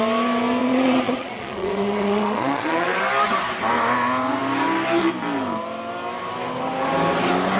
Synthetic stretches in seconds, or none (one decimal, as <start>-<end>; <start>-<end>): 0.6-3.0